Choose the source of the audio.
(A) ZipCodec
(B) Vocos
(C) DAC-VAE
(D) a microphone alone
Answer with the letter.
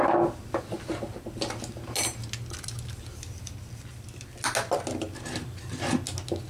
D